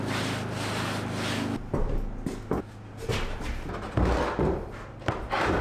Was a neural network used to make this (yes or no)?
no